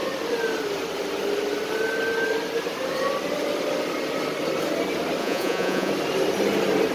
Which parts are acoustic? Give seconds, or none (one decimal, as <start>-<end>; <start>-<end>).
0.0-5.2; 5.9-6.9